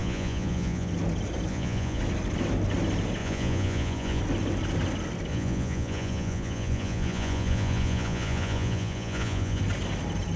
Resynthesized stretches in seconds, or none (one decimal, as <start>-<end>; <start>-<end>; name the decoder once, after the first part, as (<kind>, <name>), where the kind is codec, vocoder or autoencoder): 0.0-0.9 (vocoder, Vocos); 1.5-2.0; 3.2-4.2; 5.3-9.6